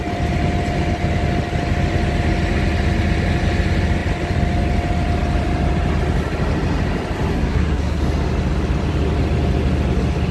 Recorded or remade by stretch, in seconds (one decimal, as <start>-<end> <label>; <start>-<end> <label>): 0.0-7.3 recorded; 7.3-8.0 remade; 8.0-10.3 recorded